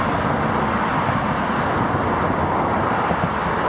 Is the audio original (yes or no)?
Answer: yes